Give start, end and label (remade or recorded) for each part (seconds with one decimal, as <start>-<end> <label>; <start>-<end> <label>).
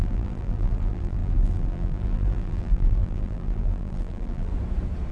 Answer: 0.0-4.5 remade; 4.5-5.1 recorded